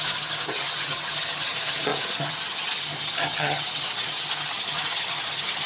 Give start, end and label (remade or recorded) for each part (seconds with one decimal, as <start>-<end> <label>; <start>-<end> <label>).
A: 0.0-5.7 remade